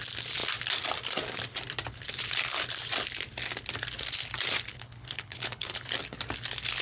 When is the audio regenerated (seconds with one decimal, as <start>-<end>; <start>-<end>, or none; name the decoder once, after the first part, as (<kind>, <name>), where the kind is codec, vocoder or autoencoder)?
4.7-5.9 (codec, HILCodec)